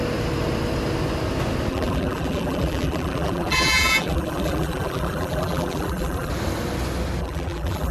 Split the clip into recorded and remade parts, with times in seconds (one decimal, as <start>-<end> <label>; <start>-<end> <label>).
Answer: 0.0-1.7 recorded; 1.7-6.3 remade; 6.3-7.2 recorded; 7.2-7.9 remade